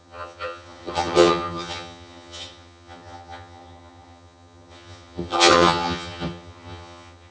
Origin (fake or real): fake